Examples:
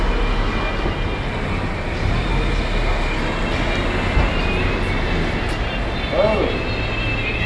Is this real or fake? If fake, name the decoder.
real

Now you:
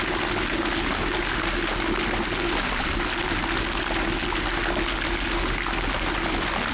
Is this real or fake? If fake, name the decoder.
real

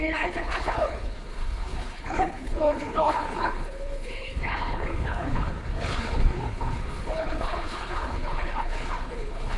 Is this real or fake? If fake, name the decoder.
fake, codec, HILCodec